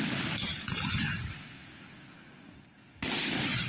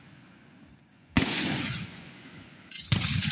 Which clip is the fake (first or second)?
second